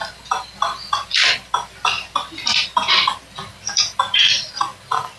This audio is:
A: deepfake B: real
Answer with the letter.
A